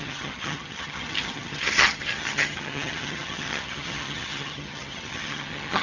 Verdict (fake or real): fake